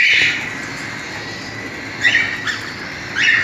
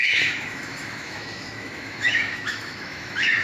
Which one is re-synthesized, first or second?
second